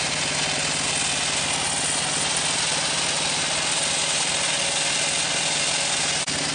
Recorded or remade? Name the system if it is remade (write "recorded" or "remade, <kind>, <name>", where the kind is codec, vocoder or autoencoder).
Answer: recorded